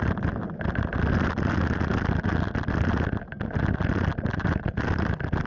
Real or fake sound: real